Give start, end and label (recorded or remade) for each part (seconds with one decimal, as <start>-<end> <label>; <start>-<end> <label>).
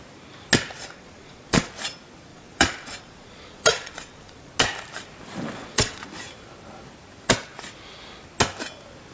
0.0-0.7 recorded; 0.7-1.7 remade; 1.7-2.3 recorded; 2.3-4.5 remade; 4.5-5.6 recorded; 5.6-6.1 remade; 6.1-9.1 recorded